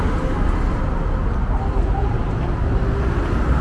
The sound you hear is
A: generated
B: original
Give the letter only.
B